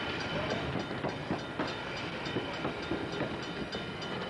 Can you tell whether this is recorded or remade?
recorded